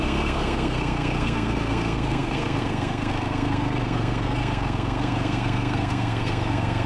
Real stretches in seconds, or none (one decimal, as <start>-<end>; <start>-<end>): none